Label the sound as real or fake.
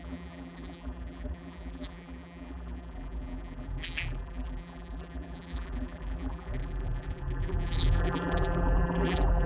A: fake